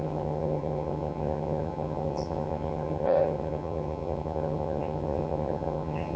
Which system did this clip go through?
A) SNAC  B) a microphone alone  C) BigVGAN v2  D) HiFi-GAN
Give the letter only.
D